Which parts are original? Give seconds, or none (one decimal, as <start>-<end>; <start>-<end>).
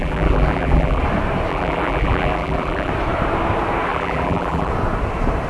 1.0-1.5; 2.9-3.9; 4.7-5.5